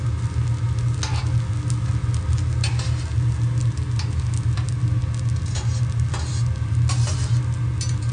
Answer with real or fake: real